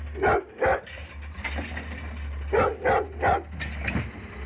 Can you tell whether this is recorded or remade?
recorded